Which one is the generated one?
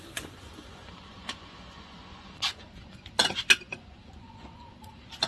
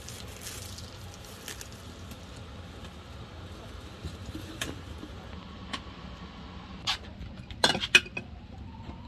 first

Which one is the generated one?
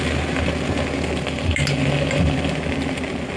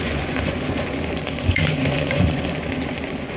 second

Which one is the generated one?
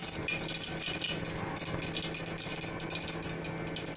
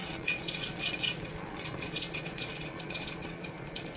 second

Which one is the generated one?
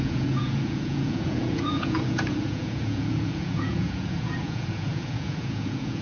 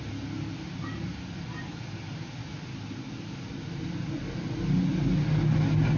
first